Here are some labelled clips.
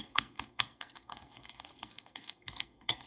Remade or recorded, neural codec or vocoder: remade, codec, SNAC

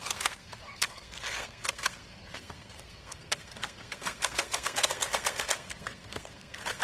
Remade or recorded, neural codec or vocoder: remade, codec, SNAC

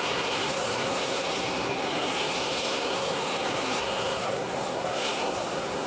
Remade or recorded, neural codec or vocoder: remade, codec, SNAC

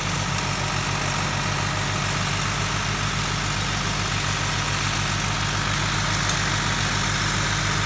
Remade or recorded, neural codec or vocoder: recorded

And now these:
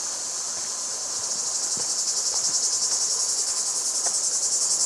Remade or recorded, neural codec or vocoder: recorded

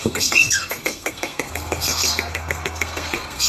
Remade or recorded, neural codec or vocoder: remade, codec, SNAC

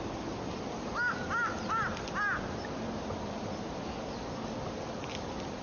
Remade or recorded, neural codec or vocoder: recorded